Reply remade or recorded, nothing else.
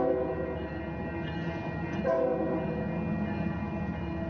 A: recorded